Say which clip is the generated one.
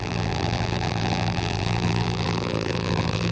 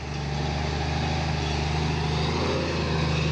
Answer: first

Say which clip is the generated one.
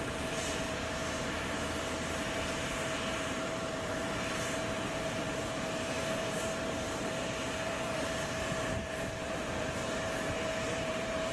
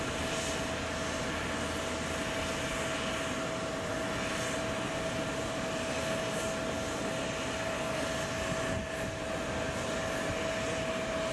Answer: first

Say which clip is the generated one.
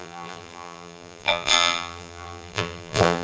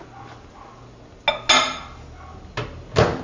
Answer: first